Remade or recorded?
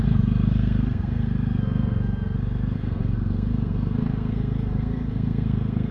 remade